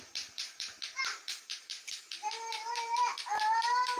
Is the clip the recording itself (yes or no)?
no